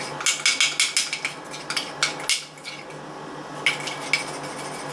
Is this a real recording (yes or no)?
yes